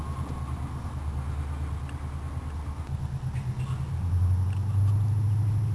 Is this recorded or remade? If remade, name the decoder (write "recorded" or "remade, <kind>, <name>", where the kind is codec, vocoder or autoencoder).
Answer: recorded